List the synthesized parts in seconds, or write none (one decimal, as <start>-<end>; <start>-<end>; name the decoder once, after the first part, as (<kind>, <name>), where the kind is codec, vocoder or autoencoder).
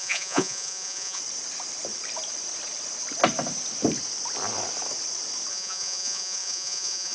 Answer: 0.0-1.2 (vocoder, Vocos); 5.5-7.1